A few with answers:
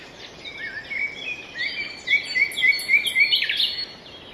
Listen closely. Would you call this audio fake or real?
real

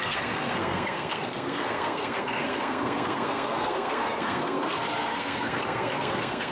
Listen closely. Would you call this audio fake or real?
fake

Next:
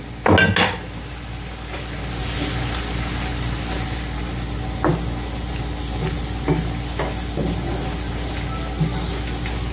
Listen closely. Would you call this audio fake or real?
real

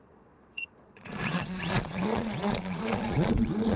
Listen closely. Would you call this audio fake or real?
fake